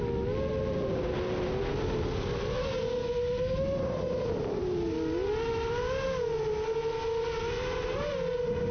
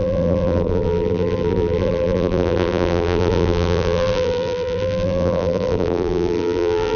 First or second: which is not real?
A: second